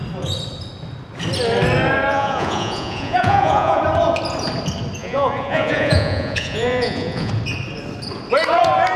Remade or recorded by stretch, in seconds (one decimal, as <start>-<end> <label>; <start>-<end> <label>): 0.0-2.1 recorded; 2.1-3.8 remade; 3.8-5.0 recorded; 5.0-7.3 remade; 7.3-9.0 recorded